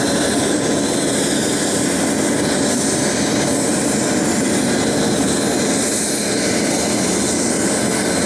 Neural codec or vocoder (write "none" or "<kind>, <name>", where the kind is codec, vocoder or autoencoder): none